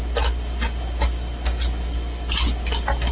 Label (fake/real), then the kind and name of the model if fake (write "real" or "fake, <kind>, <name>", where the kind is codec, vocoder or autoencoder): real